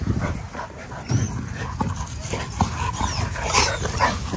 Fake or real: real